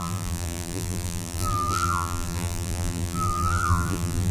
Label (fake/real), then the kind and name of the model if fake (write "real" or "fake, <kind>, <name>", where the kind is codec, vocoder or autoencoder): fake, vocoder, BigVGAN v2